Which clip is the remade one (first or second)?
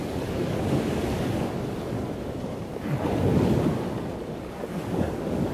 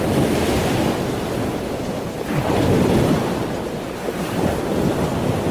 first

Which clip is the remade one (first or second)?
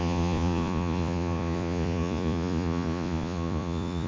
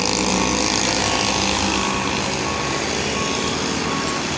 first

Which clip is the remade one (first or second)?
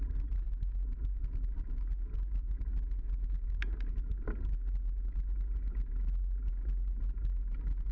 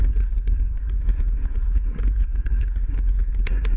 second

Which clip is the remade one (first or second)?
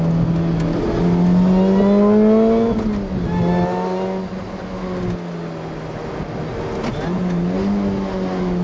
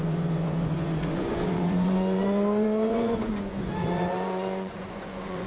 second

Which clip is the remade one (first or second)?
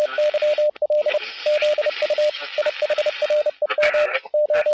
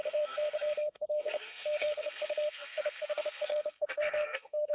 second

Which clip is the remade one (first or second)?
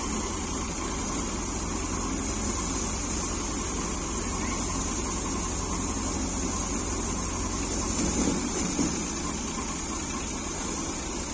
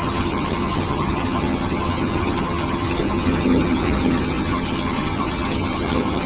second